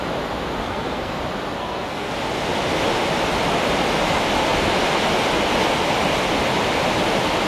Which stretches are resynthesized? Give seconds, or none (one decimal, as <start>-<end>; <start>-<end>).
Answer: 0.6-1.2; 1.6-2.1